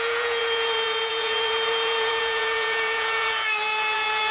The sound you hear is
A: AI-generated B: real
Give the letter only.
A